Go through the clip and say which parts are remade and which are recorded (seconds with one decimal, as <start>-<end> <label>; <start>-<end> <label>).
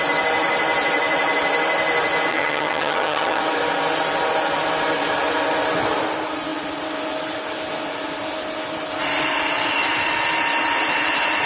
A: 0.0-2.3 recorded; 2.3-3.4 remade; 3.4-11.5 recorded